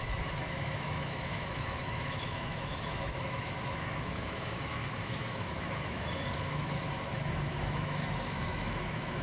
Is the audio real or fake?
fake